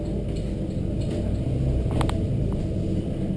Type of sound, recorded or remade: recorded